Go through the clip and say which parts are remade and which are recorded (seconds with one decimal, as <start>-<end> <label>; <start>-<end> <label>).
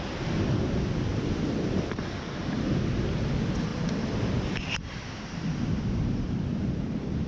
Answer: 0.0-1.1 recorded; 1.1-2.2 remade; 2.2-3.7 recorded; 3.7-7.3 remade